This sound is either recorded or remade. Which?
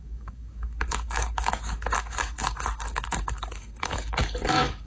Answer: remade